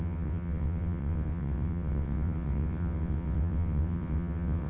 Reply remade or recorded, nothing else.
remade